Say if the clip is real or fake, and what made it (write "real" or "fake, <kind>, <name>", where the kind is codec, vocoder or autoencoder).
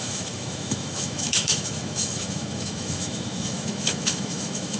fake, autoencoder, DAC-VAE